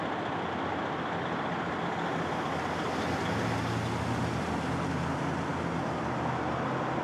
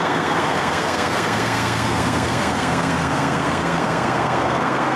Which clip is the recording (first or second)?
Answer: first